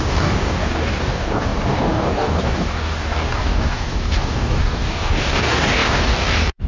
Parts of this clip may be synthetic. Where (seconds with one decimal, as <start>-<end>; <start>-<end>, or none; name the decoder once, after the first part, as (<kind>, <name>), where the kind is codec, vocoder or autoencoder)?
0.0-6.7 (codec, DAC)